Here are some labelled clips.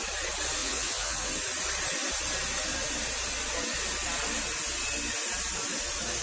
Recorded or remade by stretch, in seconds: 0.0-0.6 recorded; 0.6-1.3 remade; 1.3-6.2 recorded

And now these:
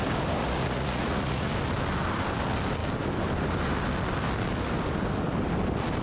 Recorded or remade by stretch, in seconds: 0.0-0.4 recorded; 0.4-1.5 remade; 1.5-6.0 recorded

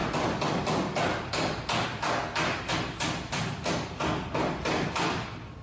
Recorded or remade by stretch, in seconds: 0.0-5.6 recorded

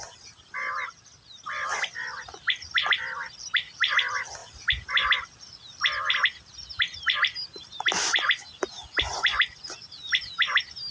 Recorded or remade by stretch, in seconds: 0.0-10.9 recorded

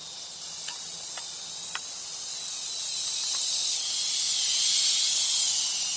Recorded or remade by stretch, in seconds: 0.0-6.0 recorded

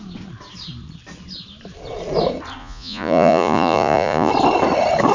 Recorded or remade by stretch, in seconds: 0.0-2.6 recorded; 2.6-4.3 remade; 4.3-5.1 recorded

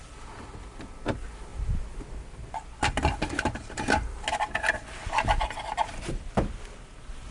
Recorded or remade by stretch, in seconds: 0.0-7.3 recorded